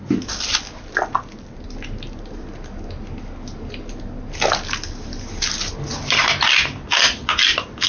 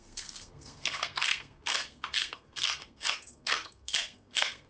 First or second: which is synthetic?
second